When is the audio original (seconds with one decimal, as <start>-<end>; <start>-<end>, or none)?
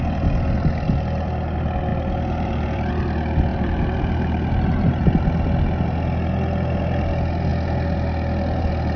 0.0-1.9; 2.9-3.5; 5.1-9.0